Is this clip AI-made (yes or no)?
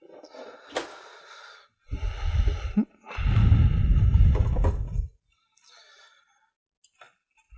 no